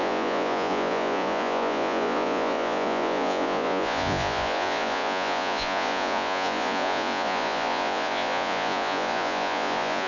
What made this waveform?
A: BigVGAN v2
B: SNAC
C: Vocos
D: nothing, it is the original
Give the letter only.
C